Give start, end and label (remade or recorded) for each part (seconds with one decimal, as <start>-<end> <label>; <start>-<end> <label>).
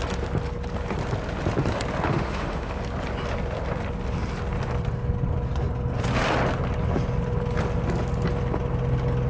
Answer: 0.0-2.1 recorded; 2.1-2.7 remade; 2.7-9.3 recorded